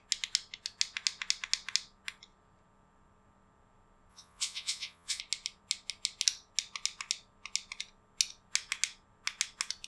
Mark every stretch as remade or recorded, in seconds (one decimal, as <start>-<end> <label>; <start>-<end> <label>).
0.0-4.1 recorded; 4.1-5.2 remade; 5.2-9.9 recorded